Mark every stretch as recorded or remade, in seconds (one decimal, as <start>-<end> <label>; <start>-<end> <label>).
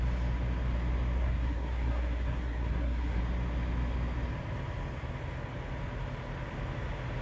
0.0-1.2 recorded; 1.2-3.2 remade; 3.2-7.2 recorded